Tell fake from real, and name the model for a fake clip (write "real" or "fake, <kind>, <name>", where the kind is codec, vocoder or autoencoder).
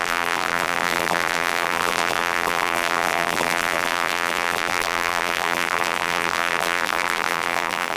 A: fake, vocoder, BigVGAN v2